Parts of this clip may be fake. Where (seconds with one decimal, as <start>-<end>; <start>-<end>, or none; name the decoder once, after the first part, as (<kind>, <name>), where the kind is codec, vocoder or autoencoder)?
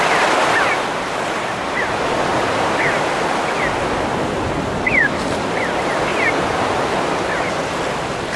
none